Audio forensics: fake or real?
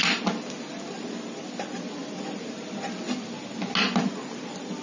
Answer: real